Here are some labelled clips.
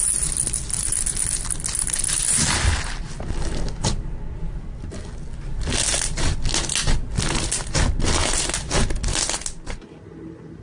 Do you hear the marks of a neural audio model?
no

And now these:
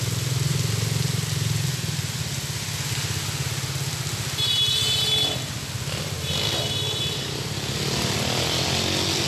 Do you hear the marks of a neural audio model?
no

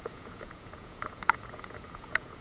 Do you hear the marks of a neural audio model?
yes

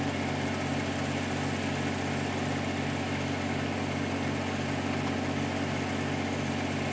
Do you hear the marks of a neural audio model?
no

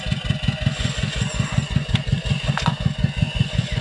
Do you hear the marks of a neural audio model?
yes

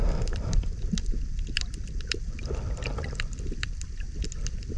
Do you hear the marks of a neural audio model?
no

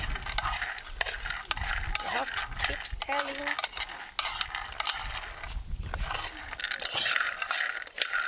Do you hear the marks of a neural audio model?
no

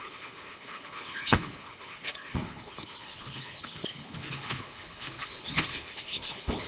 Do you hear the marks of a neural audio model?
yes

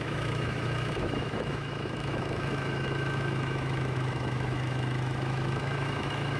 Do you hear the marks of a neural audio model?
yes